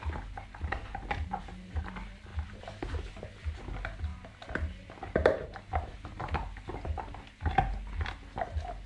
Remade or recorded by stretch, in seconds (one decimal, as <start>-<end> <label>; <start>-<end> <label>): 0.0-8.9 recorded